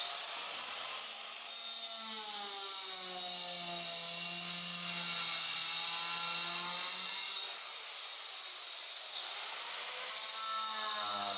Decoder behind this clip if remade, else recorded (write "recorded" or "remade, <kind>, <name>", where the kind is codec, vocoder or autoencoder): recorded